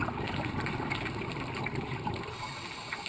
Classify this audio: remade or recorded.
recorded